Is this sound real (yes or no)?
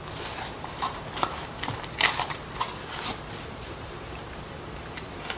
no